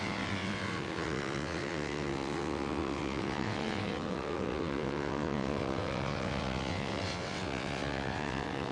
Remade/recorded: remade